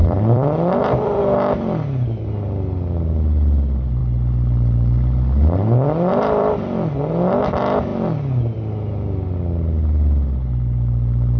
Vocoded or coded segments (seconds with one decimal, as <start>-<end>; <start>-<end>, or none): 0.0-1.2; 4.0-6.9